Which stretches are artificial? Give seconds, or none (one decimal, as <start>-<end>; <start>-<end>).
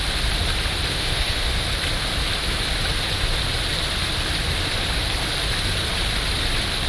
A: 0.9-1.6